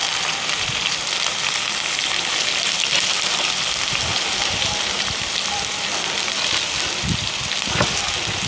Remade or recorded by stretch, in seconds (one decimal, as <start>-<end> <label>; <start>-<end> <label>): 0.0-8.5 recorded